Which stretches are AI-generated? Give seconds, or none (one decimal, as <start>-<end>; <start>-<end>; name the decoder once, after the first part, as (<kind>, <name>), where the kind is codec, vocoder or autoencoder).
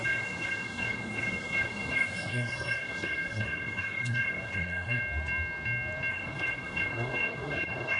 0.0-5.0 (codec, SNAC); 6.1-8.0